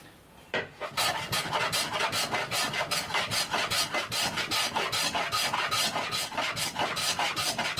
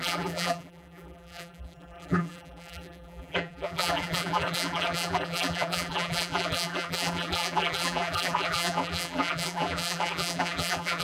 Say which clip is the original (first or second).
first